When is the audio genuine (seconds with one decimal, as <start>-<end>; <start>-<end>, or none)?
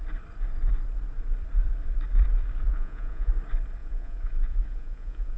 0.0-2.7; 3.3-3.8